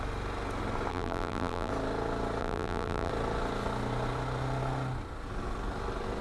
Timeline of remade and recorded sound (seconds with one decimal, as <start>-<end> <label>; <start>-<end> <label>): 0.0-0.9 recorded; 0.9-1.7 remade; 1.7-2.4 recorded; 2.4-3.1 remade; 3.1-6.2 recorded